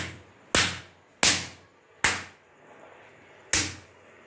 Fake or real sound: real